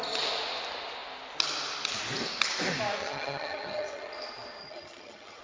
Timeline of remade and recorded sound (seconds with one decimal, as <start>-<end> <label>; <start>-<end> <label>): 0.0-3.0 recorded; 3.0-4.1 remade; 4.1-4.6 recorded; 4.6-5.4 remade